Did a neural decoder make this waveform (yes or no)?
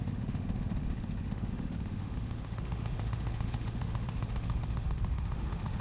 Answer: yes